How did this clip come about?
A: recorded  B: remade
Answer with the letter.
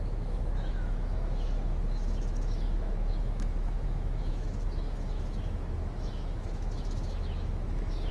B